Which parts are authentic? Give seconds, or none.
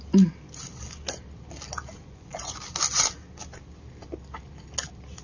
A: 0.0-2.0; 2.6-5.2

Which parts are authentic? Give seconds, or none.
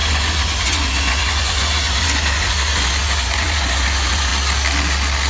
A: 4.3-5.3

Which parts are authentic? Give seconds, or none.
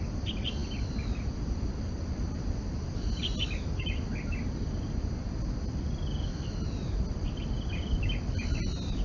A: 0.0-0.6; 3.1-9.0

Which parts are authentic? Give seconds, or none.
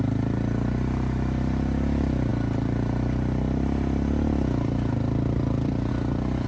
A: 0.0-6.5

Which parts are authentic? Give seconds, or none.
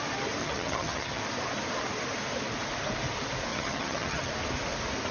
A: 0.0-0.4; 1.2-3.5; 4.3-5.1